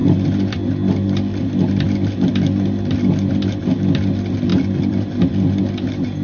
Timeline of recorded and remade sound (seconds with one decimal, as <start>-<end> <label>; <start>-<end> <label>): 0.0-4.5 recorded; 4.5-5.6 remade; 5.6-6.2 recorded